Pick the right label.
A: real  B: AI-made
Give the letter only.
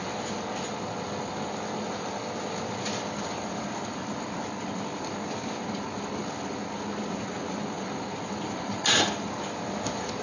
A